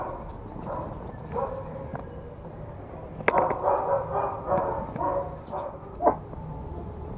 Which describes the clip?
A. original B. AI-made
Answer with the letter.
A